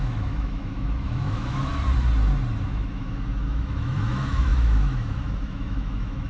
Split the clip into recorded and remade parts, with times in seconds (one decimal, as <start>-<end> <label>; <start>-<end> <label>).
0.0-1.7 remade; 1.7-2.6 recorded; 2.6-6.3 remade